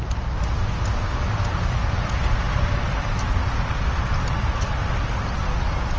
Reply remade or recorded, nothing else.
recorded